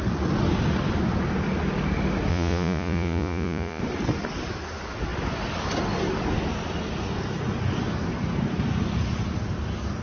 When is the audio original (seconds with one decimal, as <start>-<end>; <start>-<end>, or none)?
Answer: 0.0-2.3; 3.8-10.0